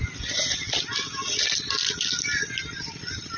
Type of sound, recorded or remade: recorded